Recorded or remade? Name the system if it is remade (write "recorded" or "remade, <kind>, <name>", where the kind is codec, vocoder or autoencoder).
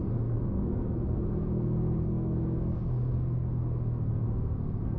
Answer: remade, codec, SNAC